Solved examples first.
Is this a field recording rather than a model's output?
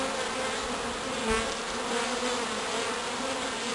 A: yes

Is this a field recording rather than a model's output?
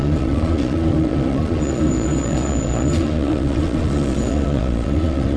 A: no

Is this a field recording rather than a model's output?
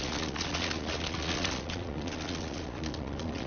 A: no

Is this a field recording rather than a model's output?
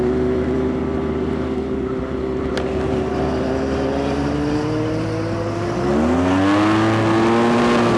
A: yes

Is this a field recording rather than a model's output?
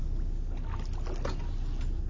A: yes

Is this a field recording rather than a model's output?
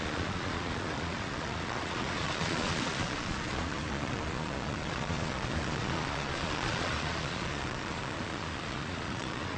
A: no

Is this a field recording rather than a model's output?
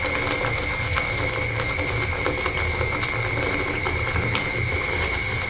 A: yes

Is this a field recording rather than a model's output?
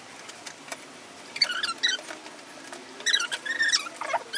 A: yes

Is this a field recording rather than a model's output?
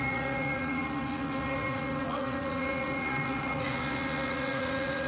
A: no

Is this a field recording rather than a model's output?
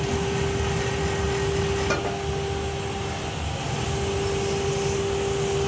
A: yes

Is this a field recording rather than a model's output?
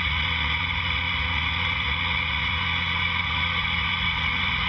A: no